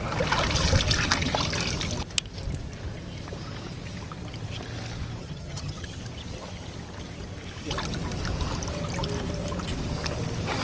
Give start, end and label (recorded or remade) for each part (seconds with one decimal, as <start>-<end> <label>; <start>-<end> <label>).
0.0-5.2 recorded; 5.2-6.0 remade; 6.0-10.6 recorded